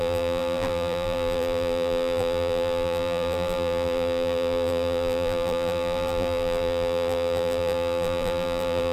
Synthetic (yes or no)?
yes